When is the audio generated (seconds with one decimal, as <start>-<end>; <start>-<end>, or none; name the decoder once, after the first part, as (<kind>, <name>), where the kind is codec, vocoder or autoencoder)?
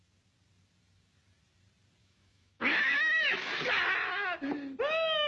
2.0-3.5 (autoencoder, DAC-VAE)